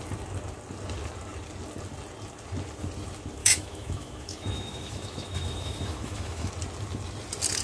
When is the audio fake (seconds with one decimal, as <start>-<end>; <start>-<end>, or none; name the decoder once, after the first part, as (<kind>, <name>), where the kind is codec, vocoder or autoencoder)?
3.4-6.5 (autoencoder, DAC-VAE)